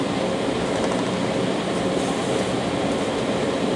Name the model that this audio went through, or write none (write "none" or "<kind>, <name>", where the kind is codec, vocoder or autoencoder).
vocoder, BigVGAN v2